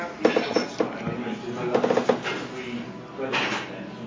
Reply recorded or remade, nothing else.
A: recorded